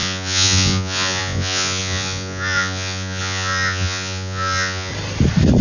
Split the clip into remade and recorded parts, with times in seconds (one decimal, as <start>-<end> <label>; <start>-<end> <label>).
0.0-4.9 remade; 4.9-5.6 recorded